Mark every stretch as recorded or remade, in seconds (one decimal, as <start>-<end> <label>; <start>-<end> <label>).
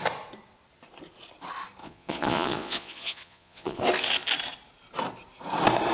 0.0-1.8 recorded; 1.8-3.8 remade; 3.8-5.9 recorded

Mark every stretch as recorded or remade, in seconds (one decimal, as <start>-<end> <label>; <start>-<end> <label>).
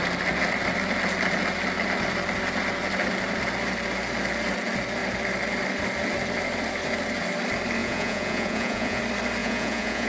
0.0-7.8 recorded; 7.8-9.0 remade; 9.0-9.4 recorded; 9.4-10.1 remade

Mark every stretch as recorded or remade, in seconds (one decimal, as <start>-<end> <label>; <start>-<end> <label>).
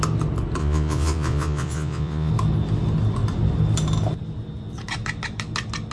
0.0-0.6 recorded; 0.6-2.3 remade; 2.3-5.9 recorded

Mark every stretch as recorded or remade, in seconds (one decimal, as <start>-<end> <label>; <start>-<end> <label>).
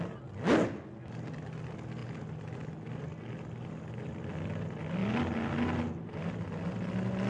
0.0-7.3 recorded